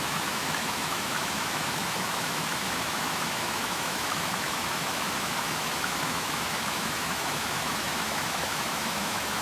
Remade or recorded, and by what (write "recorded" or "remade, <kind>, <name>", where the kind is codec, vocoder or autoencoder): remade, autoencoder, DAC-VAE